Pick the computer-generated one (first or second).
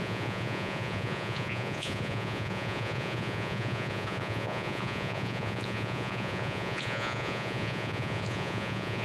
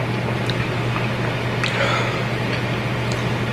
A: first